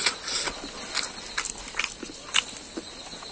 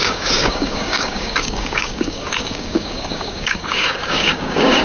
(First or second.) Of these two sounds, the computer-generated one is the second